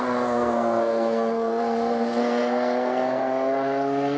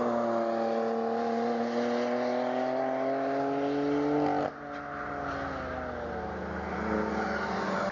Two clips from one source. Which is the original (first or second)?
second